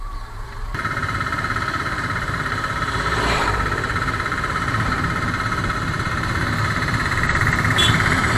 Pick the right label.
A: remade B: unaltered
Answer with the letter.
A